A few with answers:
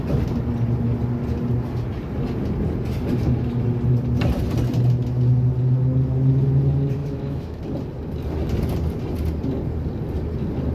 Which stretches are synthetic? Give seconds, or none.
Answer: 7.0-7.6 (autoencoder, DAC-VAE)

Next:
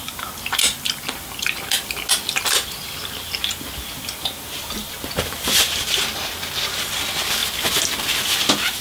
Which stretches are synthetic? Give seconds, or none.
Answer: none

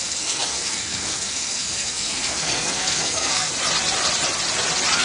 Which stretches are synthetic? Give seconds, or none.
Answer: 0.0-3.5 (codec, SNAC)

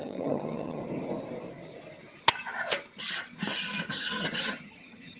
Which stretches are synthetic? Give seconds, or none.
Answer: 0.0-0.8 (vocoder, HiFi-GAN); 3.9-5.2